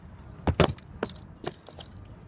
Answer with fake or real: real